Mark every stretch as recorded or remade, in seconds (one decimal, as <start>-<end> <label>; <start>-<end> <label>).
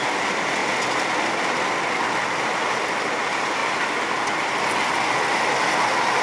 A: 0.0-6.2 recorded